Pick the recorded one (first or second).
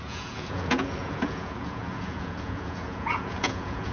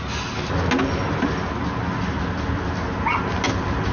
second